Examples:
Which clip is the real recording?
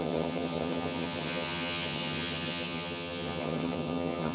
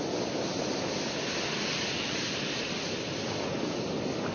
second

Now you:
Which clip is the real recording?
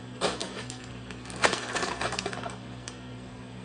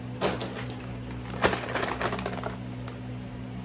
second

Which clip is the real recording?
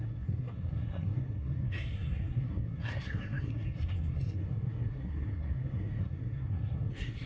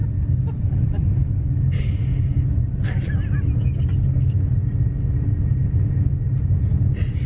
second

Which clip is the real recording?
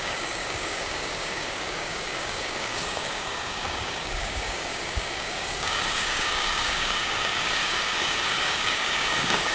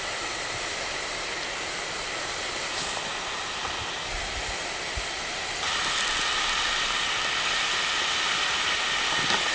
second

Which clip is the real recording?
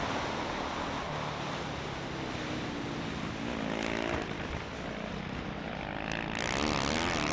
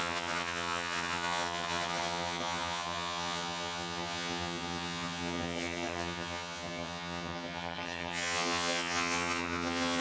first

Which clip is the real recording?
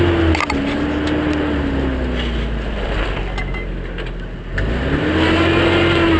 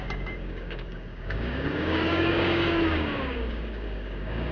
first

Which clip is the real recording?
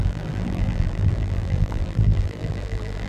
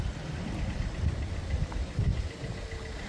second